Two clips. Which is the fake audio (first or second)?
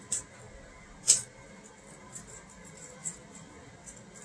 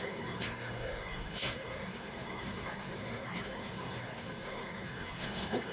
second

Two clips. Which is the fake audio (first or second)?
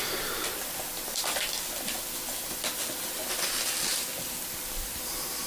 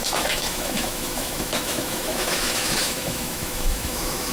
second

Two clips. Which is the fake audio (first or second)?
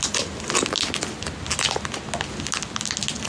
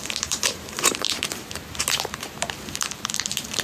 second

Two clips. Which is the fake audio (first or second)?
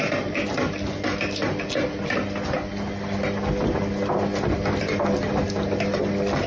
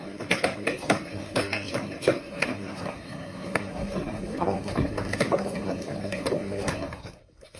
second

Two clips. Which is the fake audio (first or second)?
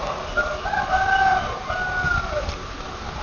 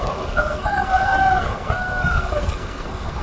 second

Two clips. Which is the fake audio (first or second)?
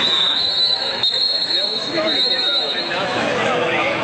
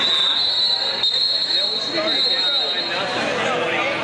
first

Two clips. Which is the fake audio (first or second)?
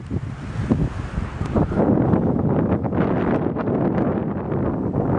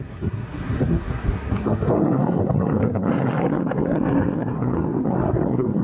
second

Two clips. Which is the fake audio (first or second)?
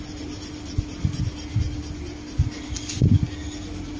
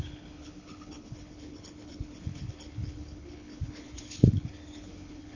second